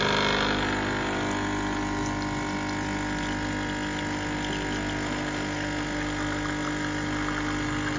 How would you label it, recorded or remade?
recorded